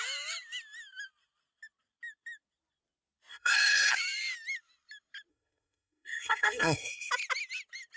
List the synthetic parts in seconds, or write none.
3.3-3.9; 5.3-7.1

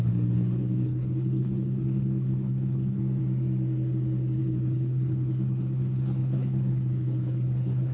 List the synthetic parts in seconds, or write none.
0.0-3.0; 4.4-7.9

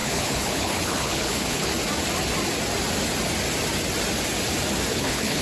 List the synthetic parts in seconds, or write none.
0.0-1.7; 4.9-5.4

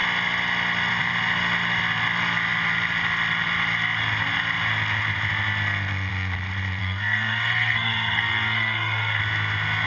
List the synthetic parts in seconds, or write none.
6.8-9.2

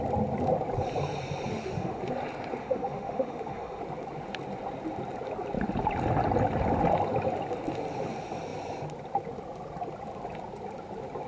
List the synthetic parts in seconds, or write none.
1.5-2.0; 2.6-3.8

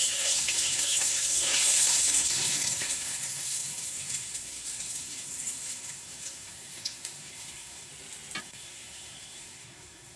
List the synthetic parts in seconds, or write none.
0.0-7.9; 8.4-10.2

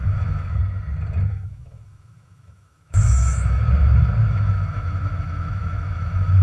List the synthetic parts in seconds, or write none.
0.0-0.6; 1.3-3.6; 4.3-6.4